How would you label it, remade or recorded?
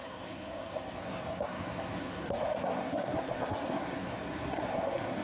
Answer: remade